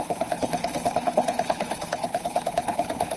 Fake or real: fake